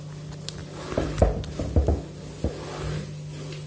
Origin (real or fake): real